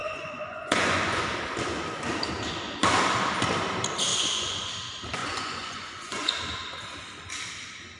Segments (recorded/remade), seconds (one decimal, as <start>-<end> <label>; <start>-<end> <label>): 0.0-1.2 remade; 1.2-4.1 recorded; 4.1-4.7 remade; 4.7-5.2 recorded; 5.2-6.3 remade; 6.3-8.0 recorded